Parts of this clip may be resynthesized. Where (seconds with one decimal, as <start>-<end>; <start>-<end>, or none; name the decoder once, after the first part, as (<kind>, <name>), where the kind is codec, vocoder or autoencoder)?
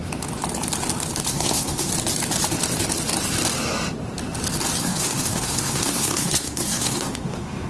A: 1.3-1.9 (codec, SNAC); 4.8-7.7